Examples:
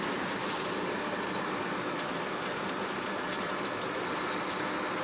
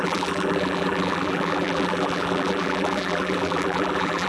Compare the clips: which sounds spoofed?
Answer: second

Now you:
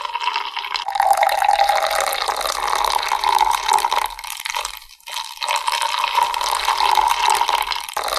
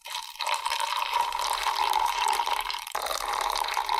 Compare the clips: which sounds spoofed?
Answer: second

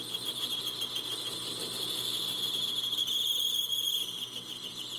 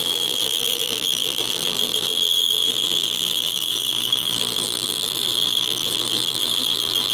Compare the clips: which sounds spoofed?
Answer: second